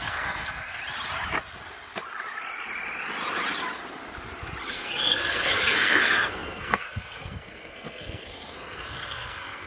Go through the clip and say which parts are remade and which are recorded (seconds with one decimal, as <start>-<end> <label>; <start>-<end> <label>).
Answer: 0.0-0.8 remade; 0.8-4.7 recorded; 4.7-9.7 remade

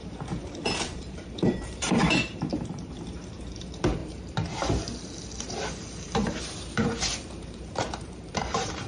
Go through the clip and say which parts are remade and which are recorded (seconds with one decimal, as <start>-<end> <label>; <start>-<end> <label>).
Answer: 0.0-4.0 remade; 4.0-5.4 recorded; 5.4-8.9 remade

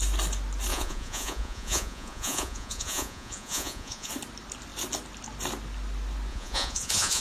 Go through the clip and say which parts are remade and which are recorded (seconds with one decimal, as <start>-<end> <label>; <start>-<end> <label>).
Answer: 0.0-0.7 recorded; 0.7-4.1 remade; 4.1-6.3 recorded; 6.3-7.2 remade

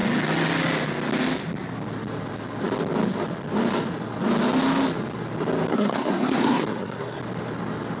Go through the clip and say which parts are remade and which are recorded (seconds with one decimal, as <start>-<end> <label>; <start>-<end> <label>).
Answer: 0.0-5.7 recorded; 5.7-7.2 remade; 7.2-8.0 recorded

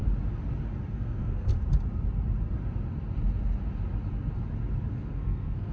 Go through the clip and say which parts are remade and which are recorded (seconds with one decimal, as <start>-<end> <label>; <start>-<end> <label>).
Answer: 0.0-0.9 recorded; 0.9-1.5 remade; 1.5-4.9 recorded; 4.9-5.7 remade

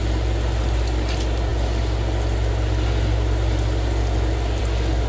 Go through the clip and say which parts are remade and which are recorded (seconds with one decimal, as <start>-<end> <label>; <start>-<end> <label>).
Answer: 0.0-5.1 recorded

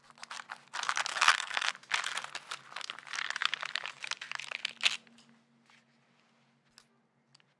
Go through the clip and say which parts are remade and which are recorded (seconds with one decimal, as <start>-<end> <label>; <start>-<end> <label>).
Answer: 0.0-1.1 recorded; 1.1-1.7 remade; 1.7-7.6 recorded

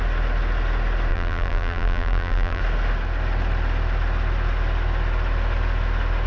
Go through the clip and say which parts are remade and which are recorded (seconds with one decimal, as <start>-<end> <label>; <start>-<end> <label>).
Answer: 0.0-1.1 recorded; 1.1-2.6 remade; 2.6-6.3 recorded